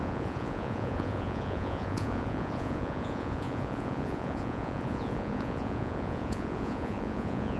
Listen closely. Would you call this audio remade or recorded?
remade